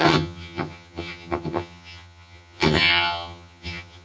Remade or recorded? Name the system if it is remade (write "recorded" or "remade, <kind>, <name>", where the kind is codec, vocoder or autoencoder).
remade, vocoder, HiFi-GAN